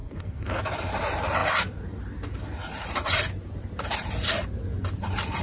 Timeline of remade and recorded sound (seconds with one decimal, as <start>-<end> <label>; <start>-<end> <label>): 0.0-0.6 remade; 0.6-5.4 recorded